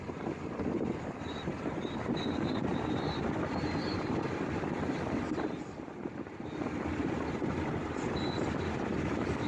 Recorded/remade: recorded